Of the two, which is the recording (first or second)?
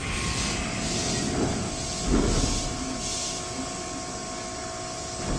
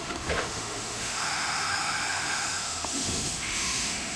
first